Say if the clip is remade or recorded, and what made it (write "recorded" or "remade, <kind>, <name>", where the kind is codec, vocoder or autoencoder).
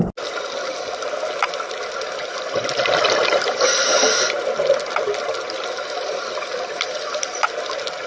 recorded